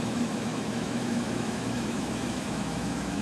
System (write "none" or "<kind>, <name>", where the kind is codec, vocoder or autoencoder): autoencoder, DAC-VAE